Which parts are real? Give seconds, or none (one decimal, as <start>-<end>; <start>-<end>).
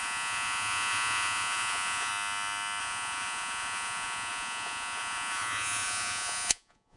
2.1-2.8